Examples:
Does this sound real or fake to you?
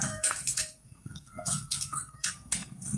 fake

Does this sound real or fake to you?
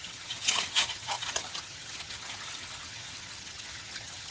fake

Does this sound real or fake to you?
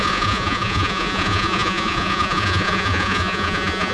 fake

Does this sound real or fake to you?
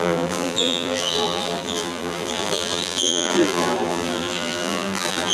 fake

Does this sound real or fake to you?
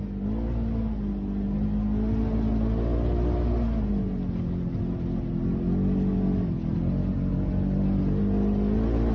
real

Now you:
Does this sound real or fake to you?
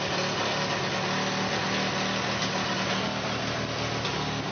real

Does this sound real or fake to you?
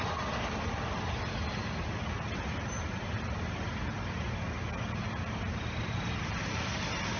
real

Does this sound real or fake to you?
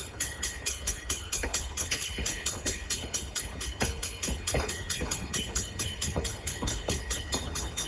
fake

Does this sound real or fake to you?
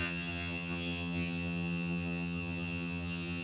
fake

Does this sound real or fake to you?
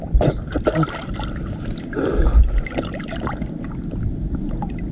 real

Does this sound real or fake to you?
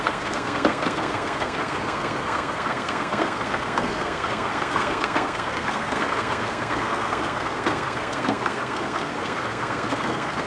fake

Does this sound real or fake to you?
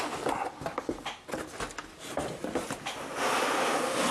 real